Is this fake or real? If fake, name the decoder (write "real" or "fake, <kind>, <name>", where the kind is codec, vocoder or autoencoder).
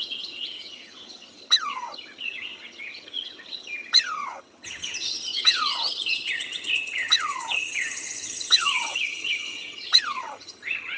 fake, vocoder, HiFi-GAN